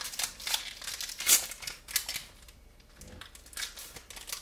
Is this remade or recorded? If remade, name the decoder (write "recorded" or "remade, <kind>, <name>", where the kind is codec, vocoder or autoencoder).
recorded